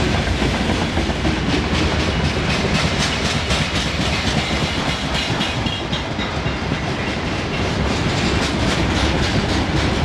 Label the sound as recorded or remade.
recorded